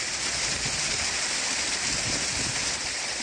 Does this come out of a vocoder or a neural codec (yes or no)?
no